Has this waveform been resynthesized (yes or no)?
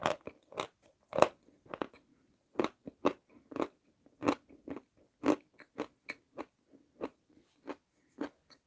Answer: no